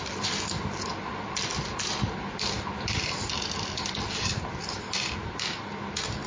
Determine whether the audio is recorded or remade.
recorded